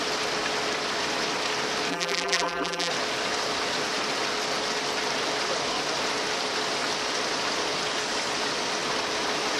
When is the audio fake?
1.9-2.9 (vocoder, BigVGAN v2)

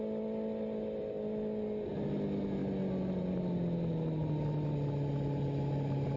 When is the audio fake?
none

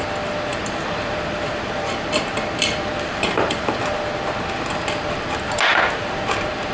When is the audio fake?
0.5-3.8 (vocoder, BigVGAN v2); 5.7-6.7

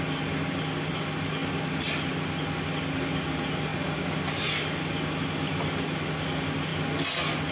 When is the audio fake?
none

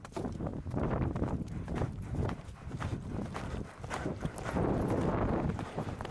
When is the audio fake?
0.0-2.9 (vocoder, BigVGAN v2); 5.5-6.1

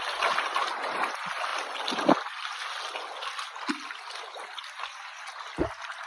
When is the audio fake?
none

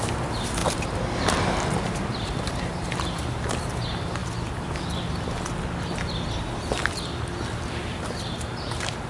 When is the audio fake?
0.0-4.2 (vocoder, BigVGAN v2); 7.6-9.1